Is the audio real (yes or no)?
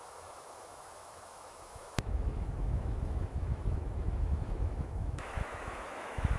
no